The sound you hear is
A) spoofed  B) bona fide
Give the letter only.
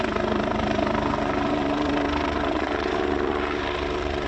A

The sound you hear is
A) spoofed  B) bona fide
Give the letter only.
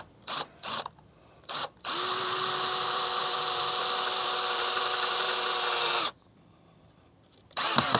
A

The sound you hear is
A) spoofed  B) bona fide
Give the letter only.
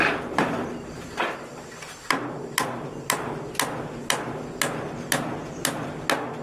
B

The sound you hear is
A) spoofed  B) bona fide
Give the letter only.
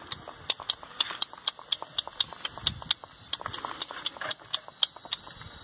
B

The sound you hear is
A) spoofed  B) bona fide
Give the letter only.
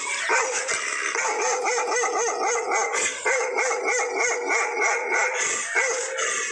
B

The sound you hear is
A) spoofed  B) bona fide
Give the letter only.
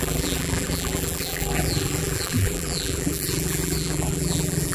A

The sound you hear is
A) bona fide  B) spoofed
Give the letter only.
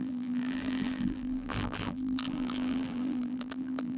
B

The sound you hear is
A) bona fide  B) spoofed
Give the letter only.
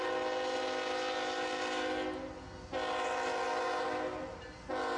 A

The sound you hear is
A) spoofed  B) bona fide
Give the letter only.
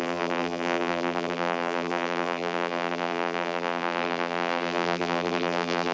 A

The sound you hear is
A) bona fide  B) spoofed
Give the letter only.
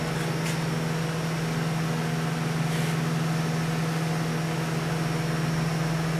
A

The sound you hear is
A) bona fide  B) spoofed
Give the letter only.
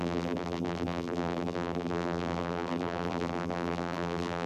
B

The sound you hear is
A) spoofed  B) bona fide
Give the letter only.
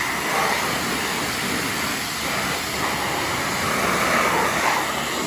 B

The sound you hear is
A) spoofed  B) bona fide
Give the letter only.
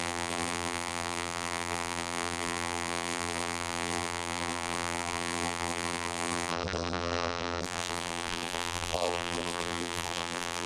A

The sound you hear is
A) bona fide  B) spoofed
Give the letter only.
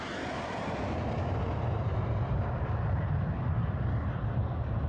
B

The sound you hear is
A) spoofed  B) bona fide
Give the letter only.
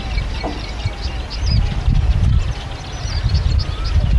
B